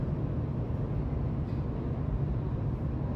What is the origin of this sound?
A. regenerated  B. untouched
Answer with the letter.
B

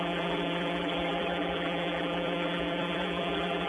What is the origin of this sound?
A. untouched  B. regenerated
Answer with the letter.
B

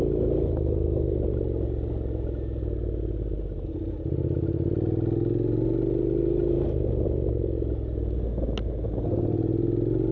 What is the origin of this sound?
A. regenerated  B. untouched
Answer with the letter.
B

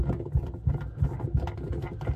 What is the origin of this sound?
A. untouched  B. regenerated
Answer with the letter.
A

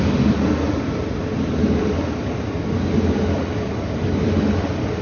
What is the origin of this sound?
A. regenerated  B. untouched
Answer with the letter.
B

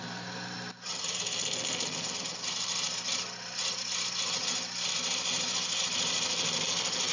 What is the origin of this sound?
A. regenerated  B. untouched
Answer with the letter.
B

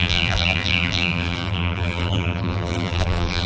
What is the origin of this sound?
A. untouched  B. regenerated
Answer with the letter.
B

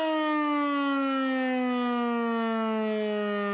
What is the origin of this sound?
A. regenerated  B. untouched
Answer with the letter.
B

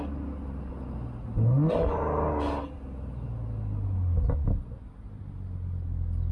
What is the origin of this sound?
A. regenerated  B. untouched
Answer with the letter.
B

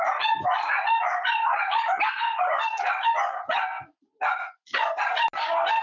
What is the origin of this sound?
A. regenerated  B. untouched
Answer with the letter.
B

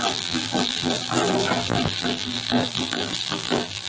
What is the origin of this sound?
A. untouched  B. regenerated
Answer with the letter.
B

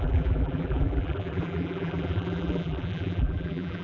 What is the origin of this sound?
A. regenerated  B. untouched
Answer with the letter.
A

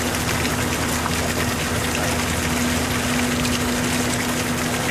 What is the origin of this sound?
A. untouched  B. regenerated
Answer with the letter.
A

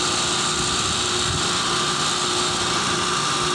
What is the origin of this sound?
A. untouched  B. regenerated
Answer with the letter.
A